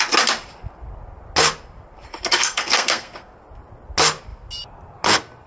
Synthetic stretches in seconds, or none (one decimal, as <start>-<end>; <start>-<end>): 2.4-3.3